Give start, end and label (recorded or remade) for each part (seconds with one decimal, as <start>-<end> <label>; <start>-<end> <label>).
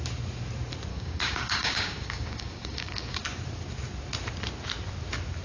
0.0-0.9 recorded; 0.9-3.2 remade; 3.2-5.4 recorded